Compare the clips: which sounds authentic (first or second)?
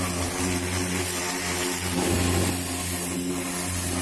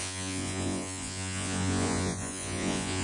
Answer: first